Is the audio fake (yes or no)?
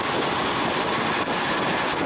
no